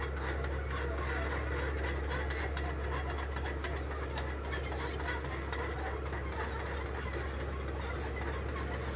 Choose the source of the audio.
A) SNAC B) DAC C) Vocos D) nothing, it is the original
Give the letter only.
D